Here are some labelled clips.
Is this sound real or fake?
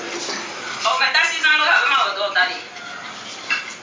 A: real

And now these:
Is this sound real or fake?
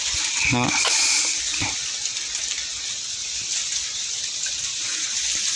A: real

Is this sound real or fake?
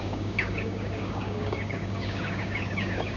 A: fake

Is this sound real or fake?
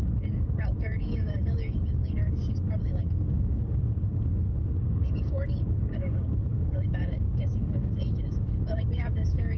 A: fake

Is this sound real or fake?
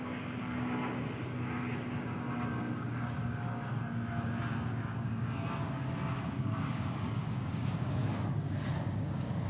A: fake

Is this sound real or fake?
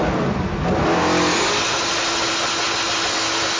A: real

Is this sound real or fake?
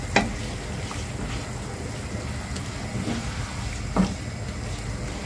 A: real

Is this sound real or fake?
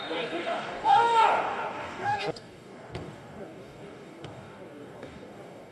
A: fake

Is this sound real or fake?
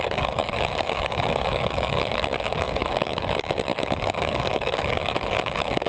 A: fake